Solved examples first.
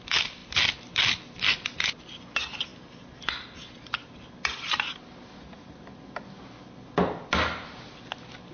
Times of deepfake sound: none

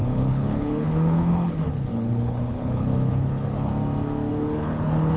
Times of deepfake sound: 0.0-3.7 (codec, HILCodec); 4.3-5.2

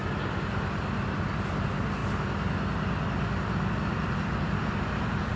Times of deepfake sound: none

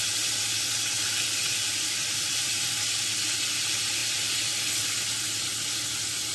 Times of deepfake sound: 2.0-2.7 (vocoder, BigVGAN v2); 4.0-4.6

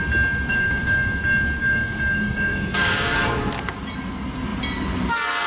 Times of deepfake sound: 0.5-1.2 (codec, DAC); 1.6-3.5

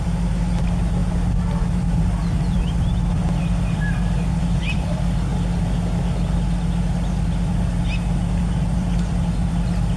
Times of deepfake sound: 0.0-1.0 (vocoder, BigVGAN v2); 2.0-5.3; 8.4-10.0

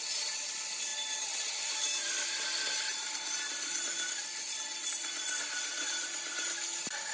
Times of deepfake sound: none

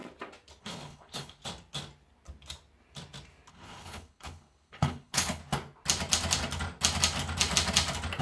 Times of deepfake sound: 0.6-1.4 (codec, HILCodec); 3.5-5.4